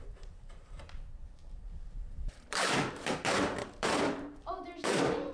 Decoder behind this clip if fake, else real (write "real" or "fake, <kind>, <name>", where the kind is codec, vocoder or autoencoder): fake, vocoder, BigVGAN v2